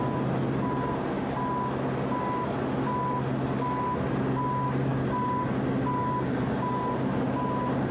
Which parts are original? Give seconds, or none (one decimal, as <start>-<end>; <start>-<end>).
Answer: 0.0-7.9